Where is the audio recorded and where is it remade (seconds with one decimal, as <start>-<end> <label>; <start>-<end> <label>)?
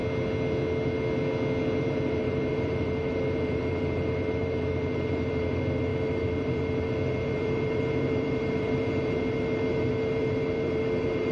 0.0-1.8 recorded; 1.8-11.3 remade